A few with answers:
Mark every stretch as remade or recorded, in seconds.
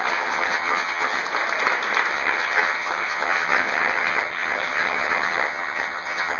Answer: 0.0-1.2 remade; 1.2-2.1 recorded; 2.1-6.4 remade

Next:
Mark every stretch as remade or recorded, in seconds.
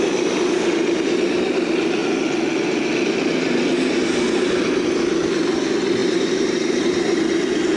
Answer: 0.0-6.0 recorded; 6.0-7.3 remade; 7.3-7.8 recorded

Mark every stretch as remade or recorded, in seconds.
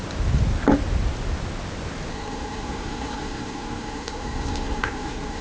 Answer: 0.0-2.1 recorded; 2.1-5.4 remade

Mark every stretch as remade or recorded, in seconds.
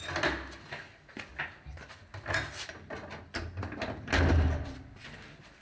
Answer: 0.0-5.6 recorded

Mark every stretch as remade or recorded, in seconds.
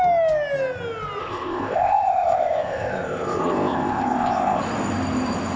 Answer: 0.0-1.2 recorded; 1.2-4.6 remade; 4.6-5.6 recorded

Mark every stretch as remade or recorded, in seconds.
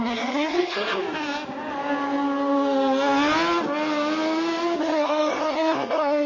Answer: 0.0-1.0 remade; 1.0-4.8 recorded; 4.8-6.3 remade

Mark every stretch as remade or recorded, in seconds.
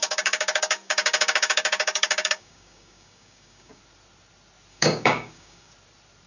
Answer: 0.0-3.8 remade; 3.8-4.7 recorded; 4.7-5.7 remade; 5.7-6.3 recorded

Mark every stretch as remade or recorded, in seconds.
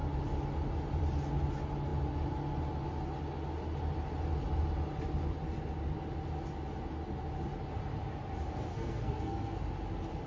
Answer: 0.0-8.7 recorded; 8.7-9.6 remade; 9.6-10.3 recorded